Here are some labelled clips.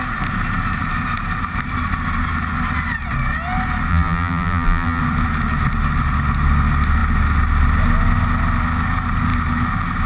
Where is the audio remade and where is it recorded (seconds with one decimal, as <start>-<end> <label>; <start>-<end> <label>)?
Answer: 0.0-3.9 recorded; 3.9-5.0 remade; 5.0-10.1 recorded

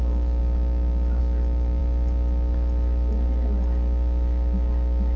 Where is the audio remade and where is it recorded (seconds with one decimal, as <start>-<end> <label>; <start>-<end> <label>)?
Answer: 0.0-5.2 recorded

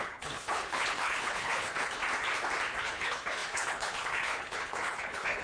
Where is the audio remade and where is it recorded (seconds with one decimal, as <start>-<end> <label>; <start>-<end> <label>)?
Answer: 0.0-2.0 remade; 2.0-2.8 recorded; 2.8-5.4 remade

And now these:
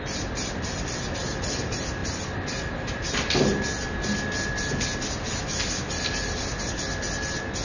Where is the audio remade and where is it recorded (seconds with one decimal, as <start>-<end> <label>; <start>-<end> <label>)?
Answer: 0.0-7.6 recorded